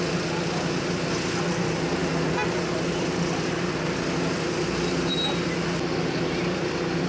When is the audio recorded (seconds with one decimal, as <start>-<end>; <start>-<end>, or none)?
0.0-7.1